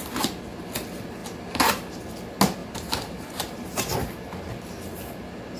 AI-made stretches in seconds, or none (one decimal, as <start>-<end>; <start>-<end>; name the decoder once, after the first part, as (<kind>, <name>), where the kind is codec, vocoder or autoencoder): 1.2-2.0 (vocoder, BigVGAN v2); 2.6-4.5

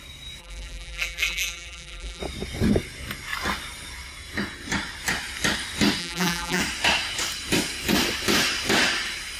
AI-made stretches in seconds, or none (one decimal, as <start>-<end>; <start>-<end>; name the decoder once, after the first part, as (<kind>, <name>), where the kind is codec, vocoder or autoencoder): 0.4-2.2 (vocoder, BigVGAN v2); 6.0-6.6

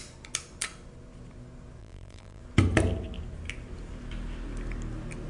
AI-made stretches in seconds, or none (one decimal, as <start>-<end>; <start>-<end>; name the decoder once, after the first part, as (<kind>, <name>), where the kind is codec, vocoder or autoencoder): 1.8-2.4 (vocoder, BigVGAN v2)

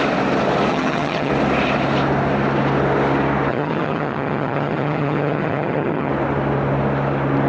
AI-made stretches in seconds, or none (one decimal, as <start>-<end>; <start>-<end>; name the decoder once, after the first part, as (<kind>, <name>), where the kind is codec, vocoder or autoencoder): 0.7-1.3 (vocoder, HiFi-GAN); 3.5-6.1

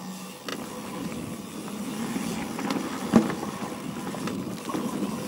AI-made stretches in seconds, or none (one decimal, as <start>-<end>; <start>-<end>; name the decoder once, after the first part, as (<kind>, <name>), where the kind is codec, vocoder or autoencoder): none